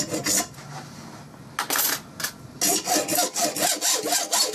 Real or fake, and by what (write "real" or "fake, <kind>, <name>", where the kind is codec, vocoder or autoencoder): real